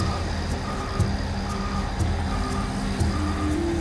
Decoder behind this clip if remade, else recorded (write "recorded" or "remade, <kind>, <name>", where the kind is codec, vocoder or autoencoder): recorded